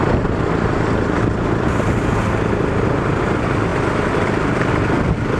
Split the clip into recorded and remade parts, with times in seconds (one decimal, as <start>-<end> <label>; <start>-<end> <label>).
0.0-5.4 recorded